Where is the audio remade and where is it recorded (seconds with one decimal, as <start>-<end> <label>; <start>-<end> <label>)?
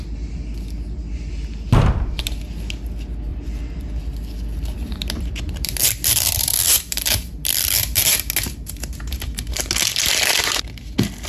0.0-3.3 recorded; 3.3-8.0 remade; 8.0-11.3 recorded